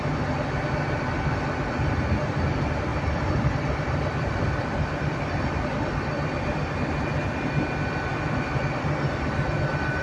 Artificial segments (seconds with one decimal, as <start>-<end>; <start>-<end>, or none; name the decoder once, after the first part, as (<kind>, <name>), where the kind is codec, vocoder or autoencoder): 2.9-6.6 (vocoder, BigVGAN v2); 8.1-10.0